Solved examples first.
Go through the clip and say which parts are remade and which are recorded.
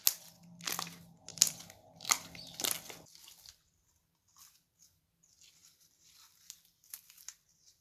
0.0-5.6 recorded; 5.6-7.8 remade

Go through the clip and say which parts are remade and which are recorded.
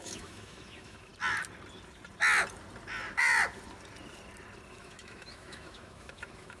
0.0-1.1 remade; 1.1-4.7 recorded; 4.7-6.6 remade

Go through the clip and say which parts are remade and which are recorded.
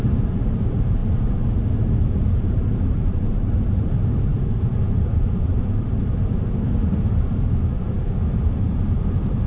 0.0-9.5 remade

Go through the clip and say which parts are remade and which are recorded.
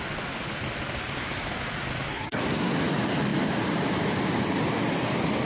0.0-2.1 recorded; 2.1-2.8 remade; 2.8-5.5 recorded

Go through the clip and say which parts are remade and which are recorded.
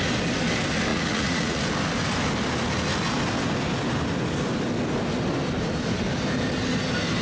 0.0-0.9 recorded; 0.9-1.6 remade; 1.6-7.2 recorded